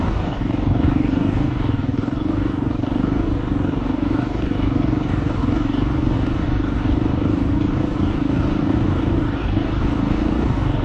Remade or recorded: remade